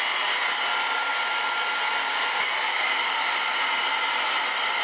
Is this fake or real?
real